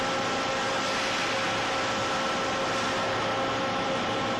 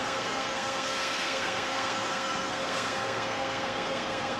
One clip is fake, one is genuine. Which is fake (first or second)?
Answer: second